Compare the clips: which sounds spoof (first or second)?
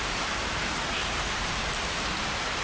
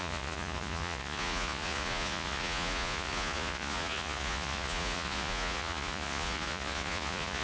second